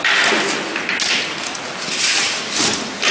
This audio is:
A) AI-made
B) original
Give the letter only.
B